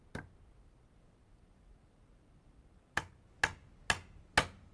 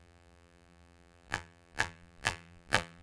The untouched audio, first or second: first